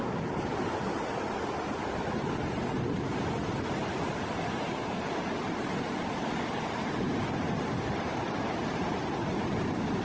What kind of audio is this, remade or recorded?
recorded